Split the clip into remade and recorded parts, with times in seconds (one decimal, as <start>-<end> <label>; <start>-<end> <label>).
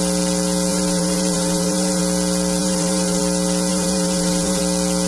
0.0-0.7 recorded; 0.7-2.0 remade; 2.0-2.6 recorded; 2.6-3.2 remade; 3.2-3.7 recorded; 3.7-4.6 remade; 4.6-5.1 recorded